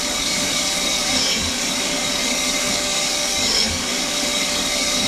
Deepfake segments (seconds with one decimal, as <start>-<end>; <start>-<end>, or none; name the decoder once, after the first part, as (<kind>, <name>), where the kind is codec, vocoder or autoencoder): 0.0-5.1 (codec, DAC)